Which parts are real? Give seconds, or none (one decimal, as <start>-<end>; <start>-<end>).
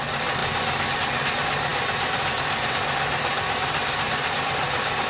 0.0-0.4; 0.9-1.7